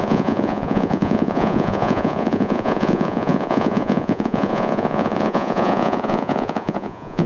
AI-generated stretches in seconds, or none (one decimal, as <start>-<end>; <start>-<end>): 0.0-7.3